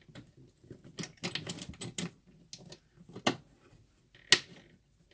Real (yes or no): yes